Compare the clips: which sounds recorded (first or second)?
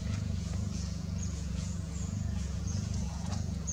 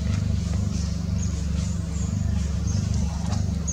second